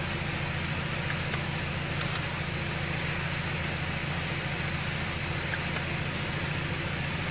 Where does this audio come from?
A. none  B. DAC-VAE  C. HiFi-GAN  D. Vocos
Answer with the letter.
A